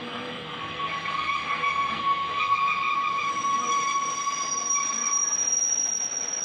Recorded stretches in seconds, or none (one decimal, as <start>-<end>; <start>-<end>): 2.9-6.4